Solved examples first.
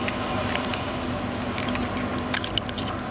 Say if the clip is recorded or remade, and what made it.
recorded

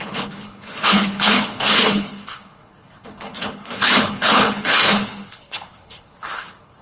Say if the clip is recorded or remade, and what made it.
remade, codec, HILCodec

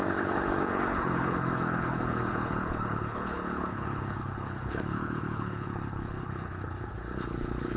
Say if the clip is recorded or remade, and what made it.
remade, codec, HILCodec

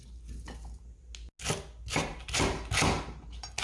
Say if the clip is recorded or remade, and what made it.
recorded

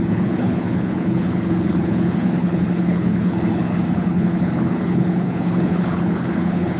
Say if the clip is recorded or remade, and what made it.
remade, codec, HILCodec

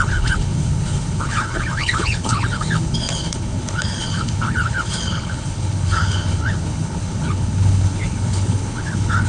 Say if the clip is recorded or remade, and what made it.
remade, codec, HILCodec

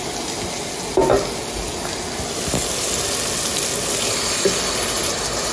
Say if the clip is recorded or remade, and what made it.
recorded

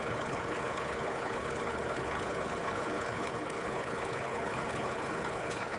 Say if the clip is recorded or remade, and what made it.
remade, codec, HILCodec